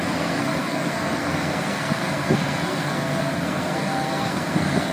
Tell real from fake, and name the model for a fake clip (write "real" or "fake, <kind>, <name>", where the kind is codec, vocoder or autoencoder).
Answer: fake, codec, SNAC